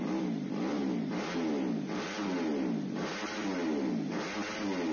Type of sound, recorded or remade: recorded